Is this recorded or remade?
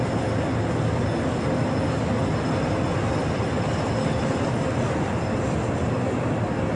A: recorded